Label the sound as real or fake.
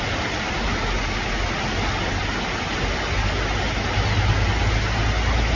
real